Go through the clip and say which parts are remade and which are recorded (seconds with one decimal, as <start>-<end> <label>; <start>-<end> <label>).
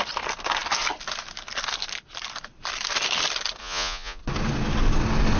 0.0-3.6 recorded; 3.6-4.2 remade; 4.2-5.4 recorded